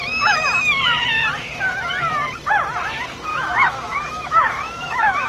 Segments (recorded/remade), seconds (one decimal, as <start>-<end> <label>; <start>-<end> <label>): 0.0-3.3 recorded; 3.3-5.3 remade